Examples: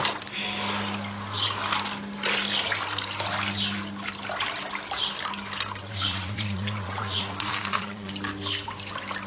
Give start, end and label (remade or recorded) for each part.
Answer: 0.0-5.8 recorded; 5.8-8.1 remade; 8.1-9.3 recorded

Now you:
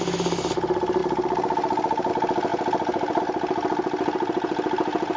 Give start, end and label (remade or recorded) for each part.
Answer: 0.0-5.2 recorded

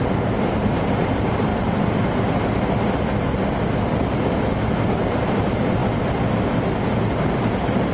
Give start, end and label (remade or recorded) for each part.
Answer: 0.0-1.5 remade; 1.5-4.9 recorded; 4.9-5.8 remade; 5.8-7.1 recorded; 7.1-7.9 remade

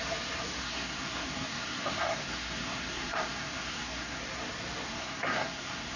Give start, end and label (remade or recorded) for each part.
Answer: 0.0-0.6 recorded; 0.6-4.2 remade; 4.2-4.9 recorded; 4.9-6.0 remade

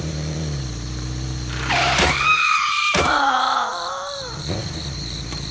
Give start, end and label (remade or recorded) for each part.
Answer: 0.0-5.5 remade